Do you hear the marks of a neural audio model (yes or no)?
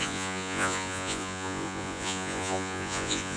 yes